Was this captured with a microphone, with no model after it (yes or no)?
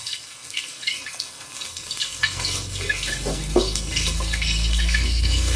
no